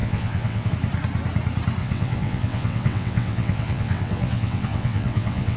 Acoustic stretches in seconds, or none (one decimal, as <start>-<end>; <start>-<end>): 0.7-1.8